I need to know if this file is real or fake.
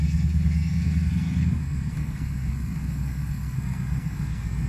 fake